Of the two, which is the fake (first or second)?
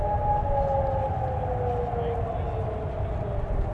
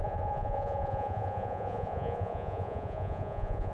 second